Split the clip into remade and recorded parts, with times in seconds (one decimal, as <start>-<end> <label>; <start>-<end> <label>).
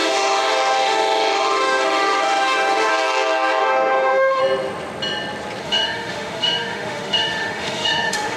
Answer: 0.0-2.9 remade; 2.9-3.6 recorded; 3.6-4.4 remade; 4.4-5.6 recorded; 5.6-8.4 remade